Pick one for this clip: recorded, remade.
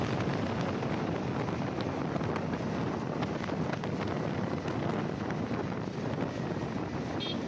recorded